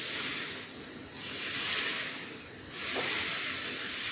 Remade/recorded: recorded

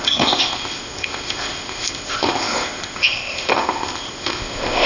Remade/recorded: remade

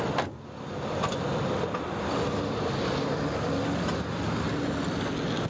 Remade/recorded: recorded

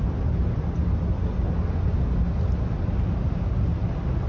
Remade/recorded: recorded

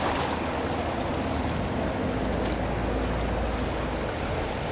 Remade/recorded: recorded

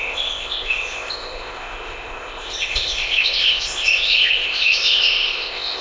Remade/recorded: remade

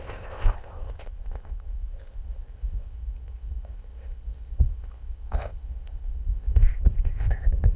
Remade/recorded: remade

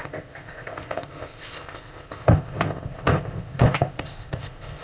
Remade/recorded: remade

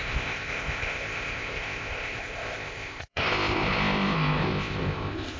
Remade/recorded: remade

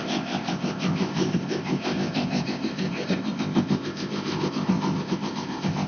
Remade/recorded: remade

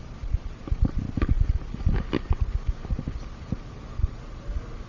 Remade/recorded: recorded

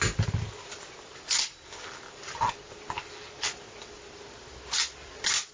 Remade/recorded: recorded